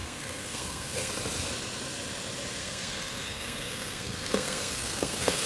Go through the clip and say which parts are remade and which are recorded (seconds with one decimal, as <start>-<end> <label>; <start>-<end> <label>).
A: 0.0-1.1 remade; 1.1-2.6 recorded; 2.6-5.5 remade